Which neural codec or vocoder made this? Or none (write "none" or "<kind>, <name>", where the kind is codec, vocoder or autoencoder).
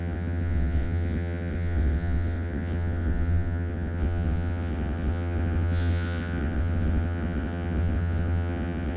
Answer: vocoder, WaveNeXt